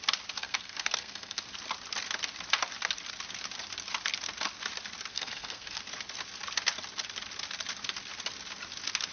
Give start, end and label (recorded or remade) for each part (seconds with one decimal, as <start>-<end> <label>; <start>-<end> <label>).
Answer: 0.0-0.4 recorded; 0.4-1.4 remade; 1.4-5.1 recorded; 5.1-5.8 remade; 5.8-9.1 recorded